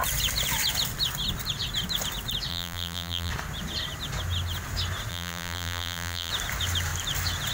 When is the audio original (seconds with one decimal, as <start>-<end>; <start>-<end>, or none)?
0.0-2.5; 3.3-5.1; 6.3-7.5